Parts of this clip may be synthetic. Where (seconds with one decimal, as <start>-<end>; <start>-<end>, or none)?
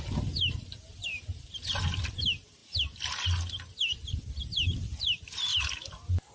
0.7-1.8